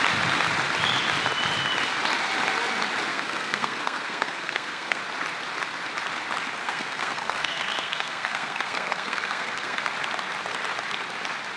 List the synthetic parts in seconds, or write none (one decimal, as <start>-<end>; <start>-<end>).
3.1-5.0; 6.6-9.9